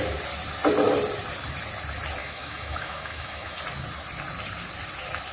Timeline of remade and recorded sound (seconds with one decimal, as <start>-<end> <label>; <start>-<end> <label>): 0.0-2.2 recorded; 2.2-3.6 remade; 3.6-5.3 recorded